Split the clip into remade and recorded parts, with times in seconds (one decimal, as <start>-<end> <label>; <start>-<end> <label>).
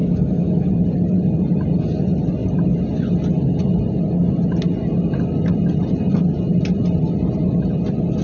0.0-0.7 remade; 0.7-8.2 recorded